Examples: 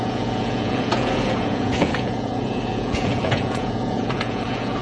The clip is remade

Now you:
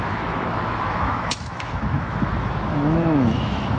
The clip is remade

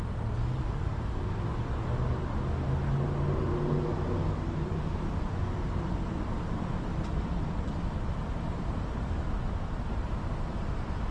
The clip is recorded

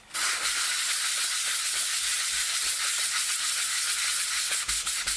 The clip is recorded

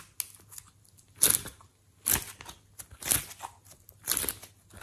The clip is recorded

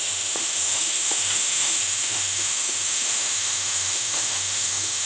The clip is remade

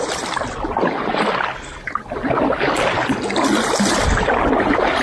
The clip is recorded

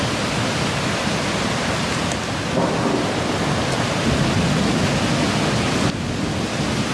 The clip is recorded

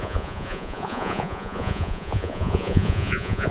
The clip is remade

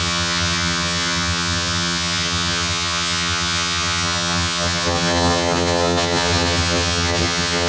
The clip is remade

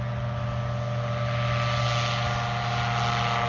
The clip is recorded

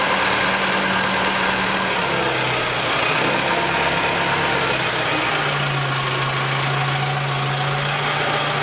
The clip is recorded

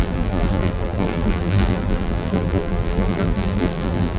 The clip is remade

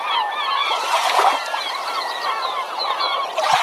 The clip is remade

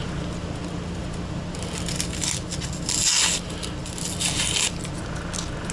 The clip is recorded